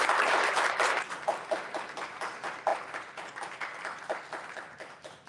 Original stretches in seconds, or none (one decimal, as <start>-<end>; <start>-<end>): none